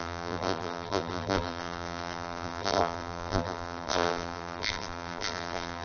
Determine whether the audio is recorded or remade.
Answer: remade